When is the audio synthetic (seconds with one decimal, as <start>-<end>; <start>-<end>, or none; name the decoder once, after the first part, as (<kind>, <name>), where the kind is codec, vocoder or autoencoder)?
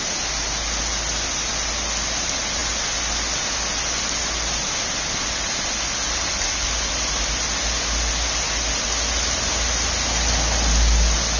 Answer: none